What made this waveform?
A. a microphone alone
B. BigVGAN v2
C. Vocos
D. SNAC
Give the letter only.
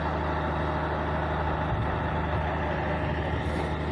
A